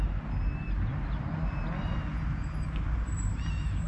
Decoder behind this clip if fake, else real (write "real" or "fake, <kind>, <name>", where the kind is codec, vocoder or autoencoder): real